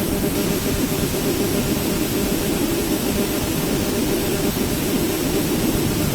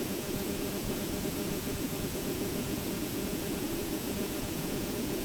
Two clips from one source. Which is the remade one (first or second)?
second